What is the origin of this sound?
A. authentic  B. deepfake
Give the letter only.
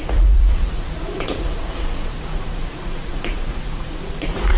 B